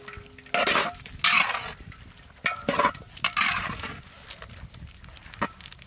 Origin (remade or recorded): recorded